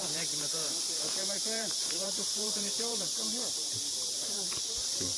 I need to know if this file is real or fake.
fake